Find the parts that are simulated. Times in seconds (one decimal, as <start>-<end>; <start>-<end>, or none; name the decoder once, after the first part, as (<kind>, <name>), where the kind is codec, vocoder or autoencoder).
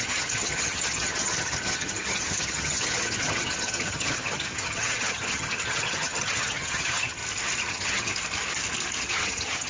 0.0-7.2 (vocoder, HiFi-GAN); 7.7-8.1; 9.0-9.7